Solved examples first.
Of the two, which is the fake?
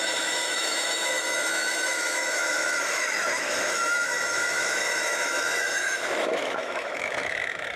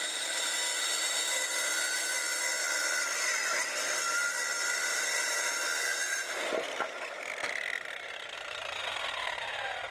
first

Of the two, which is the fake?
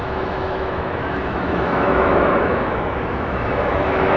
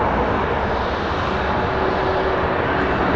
first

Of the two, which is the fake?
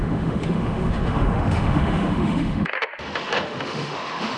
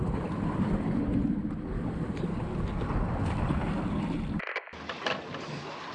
first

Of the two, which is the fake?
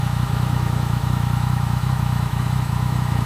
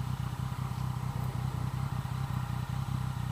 first